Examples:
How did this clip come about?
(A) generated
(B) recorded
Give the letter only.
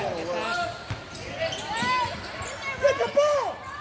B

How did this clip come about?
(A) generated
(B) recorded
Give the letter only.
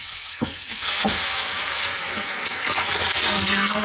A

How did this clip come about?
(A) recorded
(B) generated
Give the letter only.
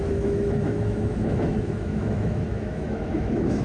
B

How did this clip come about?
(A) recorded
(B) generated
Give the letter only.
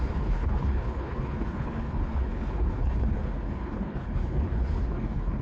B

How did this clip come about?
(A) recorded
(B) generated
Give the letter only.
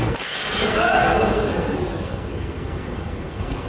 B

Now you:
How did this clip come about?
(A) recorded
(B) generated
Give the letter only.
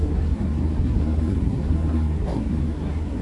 B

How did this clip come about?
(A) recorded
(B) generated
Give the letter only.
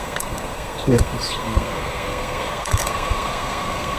B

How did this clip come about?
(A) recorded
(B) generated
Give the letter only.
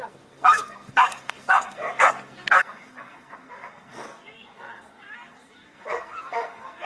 B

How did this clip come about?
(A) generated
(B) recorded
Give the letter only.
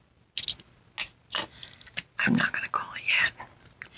B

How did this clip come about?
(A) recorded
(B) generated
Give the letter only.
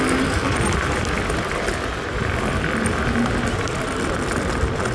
A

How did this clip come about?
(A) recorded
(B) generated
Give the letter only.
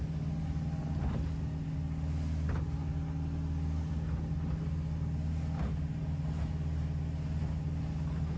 A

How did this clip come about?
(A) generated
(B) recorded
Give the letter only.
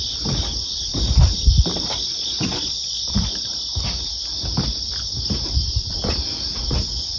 B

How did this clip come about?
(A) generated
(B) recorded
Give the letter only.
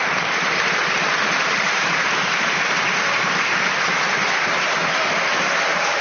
A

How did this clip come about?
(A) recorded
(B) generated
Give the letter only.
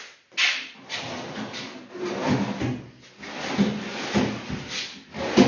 A